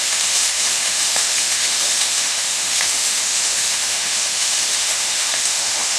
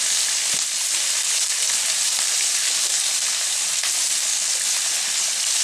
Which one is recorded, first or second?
second